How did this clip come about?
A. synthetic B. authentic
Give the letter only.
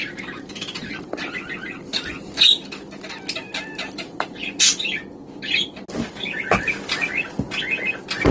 B